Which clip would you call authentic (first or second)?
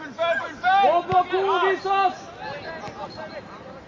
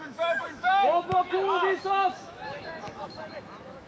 first